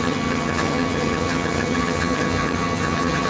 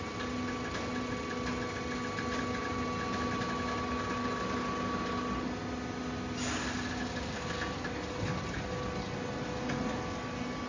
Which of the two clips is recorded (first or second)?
second